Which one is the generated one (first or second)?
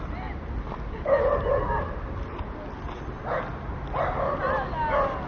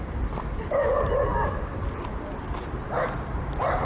second